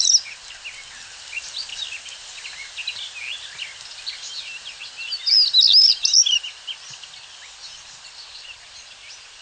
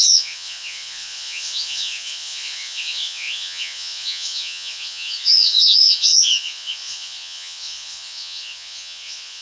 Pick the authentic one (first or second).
first